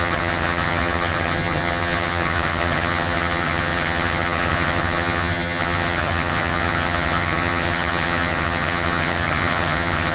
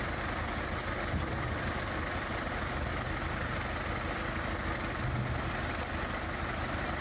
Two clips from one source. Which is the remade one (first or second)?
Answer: first